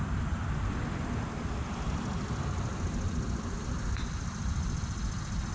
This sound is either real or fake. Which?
fake